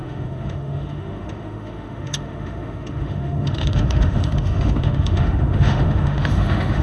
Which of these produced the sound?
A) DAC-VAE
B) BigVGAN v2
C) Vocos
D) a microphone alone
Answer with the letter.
A